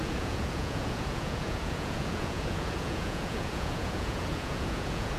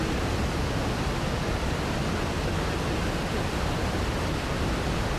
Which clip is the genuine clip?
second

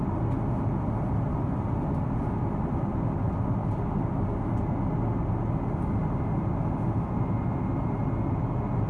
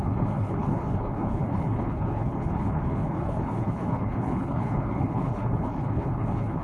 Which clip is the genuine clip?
first